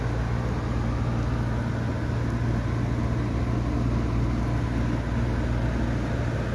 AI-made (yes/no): no